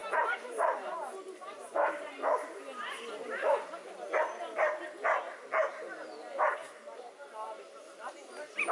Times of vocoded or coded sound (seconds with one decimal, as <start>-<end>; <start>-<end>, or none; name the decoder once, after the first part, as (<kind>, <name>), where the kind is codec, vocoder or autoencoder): 0.0-2.1 (vocoder, BigVGAN v2)